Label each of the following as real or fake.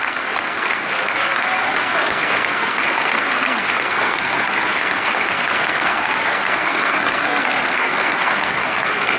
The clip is fake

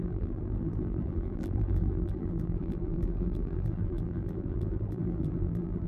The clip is fake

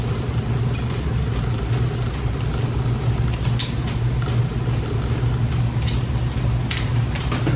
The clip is real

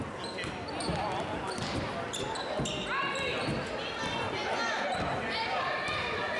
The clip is real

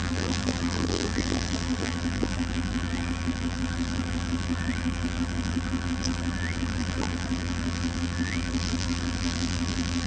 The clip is fake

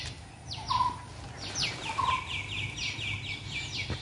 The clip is real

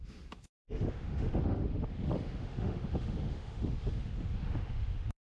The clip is fake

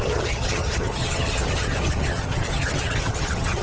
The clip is fake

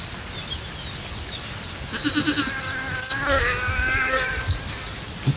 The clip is real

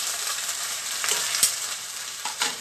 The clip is fake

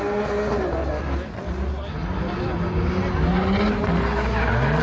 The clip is real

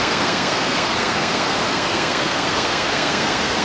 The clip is fake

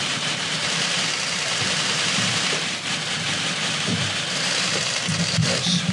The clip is fake